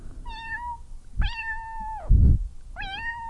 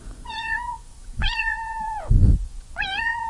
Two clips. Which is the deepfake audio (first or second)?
second